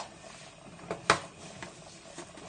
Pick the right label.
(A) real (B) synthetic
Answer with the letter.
A